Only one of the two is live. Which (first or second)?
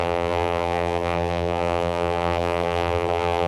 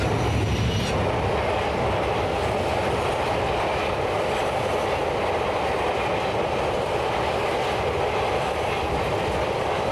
second